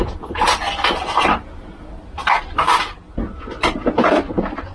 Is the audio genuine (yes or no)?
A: yes